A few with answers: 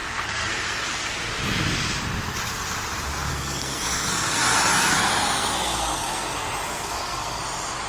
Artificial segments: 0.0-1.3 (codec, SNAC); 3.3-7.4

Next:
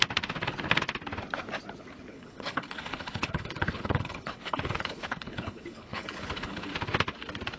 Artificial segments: 2.1-6.7 (codec, HILCodec)

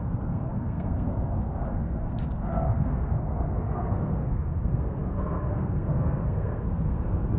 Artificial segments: 0.0-7.4 (codec, SNAC)

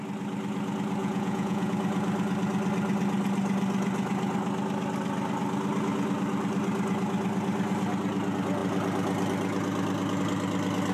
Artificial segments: 1.0-1.7 (vocoder, Vocos)

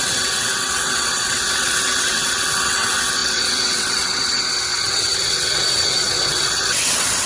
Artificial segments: 0.0-7.3 (vocoder, WaveNeXt)

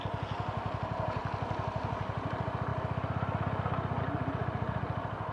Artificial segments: none

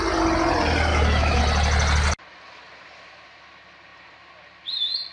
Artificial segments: 0.9-1.4 (autoencoder, DAC-VAE)